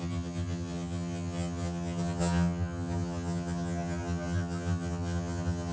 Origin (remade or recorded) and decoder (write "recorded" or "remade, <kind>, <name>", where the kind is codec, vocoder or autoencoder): remade, vocoder, HiFi-GAN